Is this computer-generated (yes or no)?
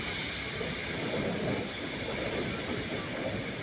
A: no